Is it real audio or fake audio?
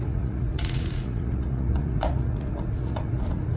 fake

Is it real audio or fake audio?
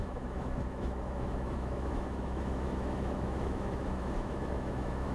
fake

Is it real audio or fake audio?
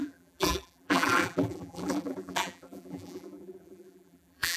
fake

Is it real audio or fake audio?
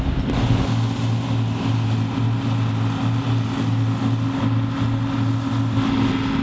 real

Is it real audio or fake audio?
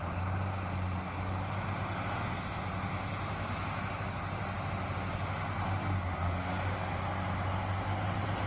real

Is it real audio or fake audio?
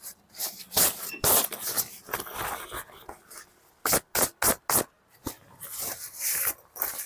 real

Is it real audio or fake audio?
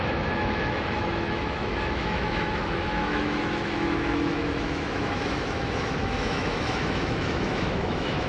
fake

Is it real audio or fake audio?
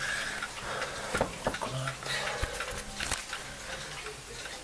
real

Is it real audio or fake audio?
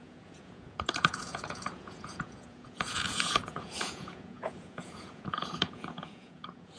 fake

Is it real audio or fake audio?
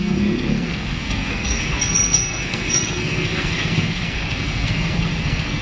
fake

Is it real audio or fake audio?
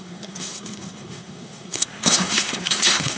fake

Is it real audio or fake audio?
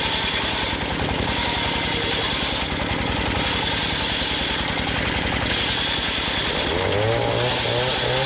real